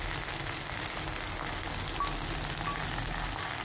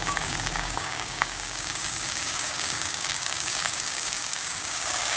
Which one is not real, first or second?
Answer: second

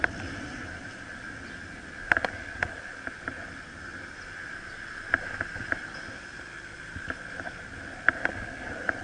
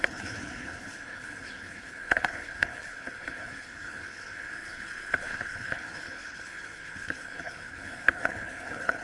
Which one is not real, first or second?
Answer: second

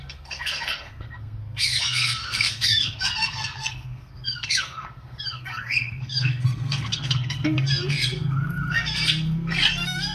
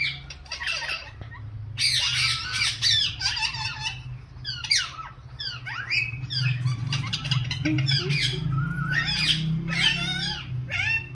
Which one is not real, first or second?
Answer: first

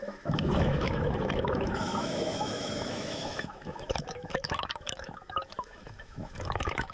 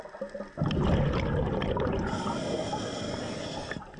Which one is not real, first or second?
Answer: first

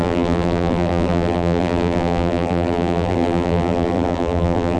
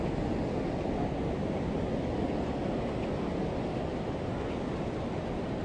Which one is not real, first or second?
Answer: first